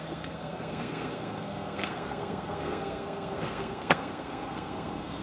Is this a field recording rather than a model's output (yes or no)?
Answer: no